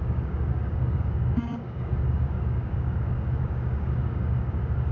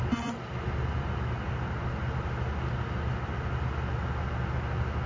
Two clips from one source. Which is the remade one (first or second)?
first